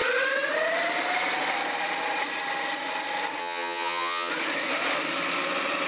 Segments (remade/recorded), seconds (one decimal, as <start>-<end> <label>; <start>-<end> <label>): 0.0-3.4 recorded; 3.4-4.3 remade; 4.3-5.9 recorded